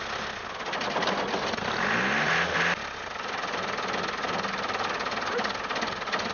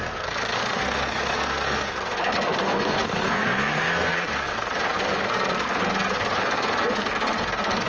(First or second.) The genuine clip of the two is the first